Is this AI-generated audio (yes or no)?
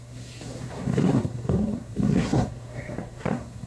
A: yes